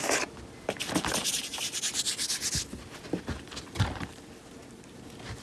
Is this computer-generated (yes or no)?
no